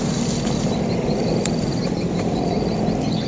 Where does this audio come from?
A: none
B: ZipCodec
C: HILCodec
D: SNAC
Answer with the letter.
A